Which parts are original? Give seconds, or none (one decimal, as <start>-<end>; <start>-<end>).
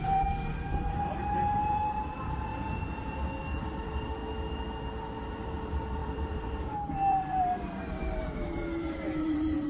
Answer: 2.5-3.4; 4.2-5.3